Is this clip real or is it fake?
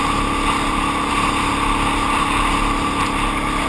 real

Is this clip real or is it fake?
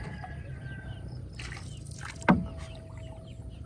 real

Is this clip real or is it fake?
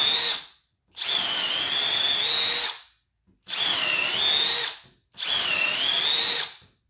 real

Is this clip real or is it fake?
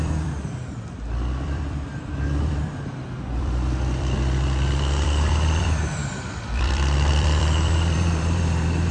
fake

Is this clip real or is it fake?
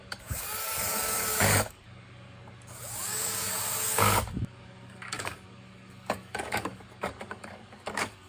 fake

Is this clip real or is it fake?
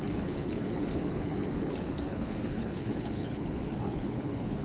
fake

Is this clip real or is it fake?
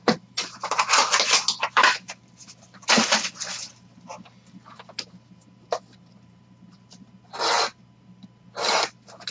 real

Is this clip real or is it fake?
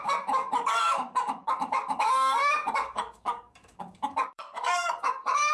fake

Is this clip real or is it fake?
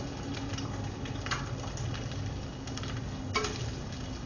real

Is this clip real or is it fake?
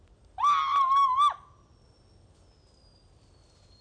real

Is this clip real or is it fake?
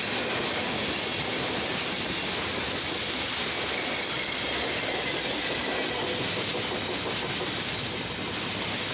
real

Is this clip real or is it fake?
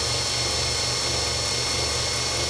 real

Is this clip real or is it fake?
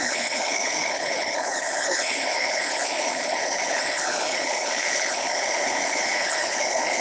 fake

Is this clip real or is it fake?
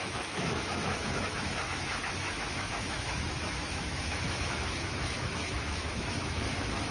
fake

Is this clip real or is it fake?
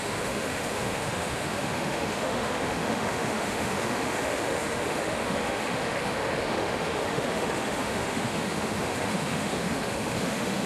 fake